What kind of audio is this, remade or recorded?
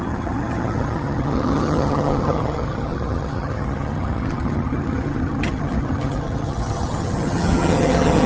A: remade